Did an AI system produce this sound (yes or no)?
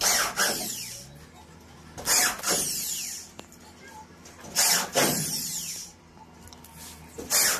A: no